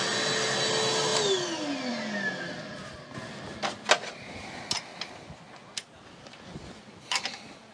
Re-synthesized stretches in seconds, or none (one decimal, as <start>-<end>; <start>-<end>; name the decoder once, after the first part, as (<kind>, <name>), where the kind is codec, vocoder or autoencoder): none